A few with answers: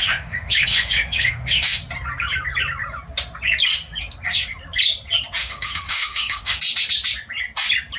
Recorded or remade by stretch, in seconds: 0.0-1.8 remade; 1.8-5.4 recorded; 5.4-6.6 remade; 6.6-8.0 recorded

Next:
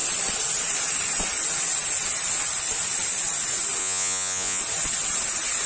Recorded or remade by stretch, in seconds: 0.0-3.8 recorded; 3.8-4.6 remade; 4.6-5.7 recorded

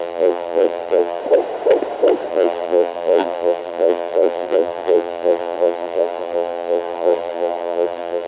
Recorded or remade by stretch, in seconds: 0.0-1.2 remade; 1.2-2.3 recorded; 2.3-8.3 remade

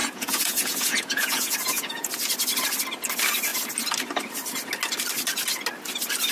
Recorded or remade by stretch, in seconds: 0.0-2.1 remade; 2.1-6.3 recorded

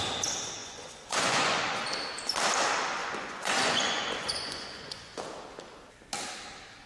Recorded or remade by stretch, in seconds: 0.0-0.6 recorded; 0.6-1.8 remade; 1.8-3.0 recorded; 3.0-5.2 remade; 5.2-6.9 recorded

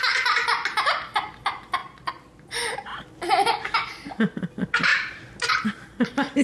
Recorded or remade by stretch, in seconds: 0.0-1.8 recorded; 1.8-2.5 remade; 2.5-6.4 recorded

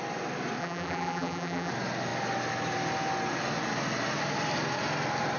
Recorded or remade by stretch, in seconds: 0.0-0.6 recorded; 0.6-1.7 remade; 1.7-5.4 recorded

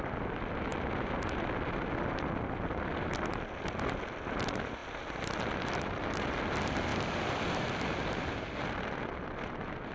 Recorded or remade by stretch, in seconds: 0.0-9.9 recorded